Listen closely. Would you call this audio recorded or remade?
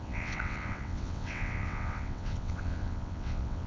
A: remade